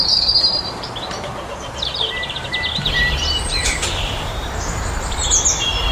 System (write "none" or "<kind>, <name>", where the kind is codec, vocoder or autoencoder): vocoder, BigVGAN v2